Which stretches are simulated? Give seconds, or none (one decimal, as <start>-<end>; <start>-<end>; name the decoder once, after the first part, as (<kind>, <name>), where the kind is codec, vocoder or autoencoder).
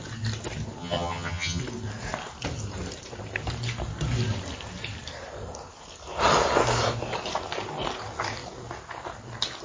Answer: 0.8-1.6 (vocoder, HiFi-GAN)